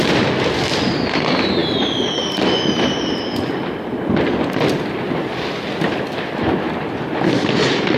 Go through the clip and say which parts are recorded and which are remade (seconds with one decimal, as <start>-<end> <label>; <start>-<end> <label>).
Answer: 0.0-8.0 recorded